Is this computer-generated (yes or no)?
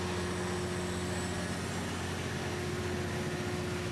no